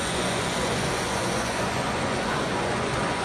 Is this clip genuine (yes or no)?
no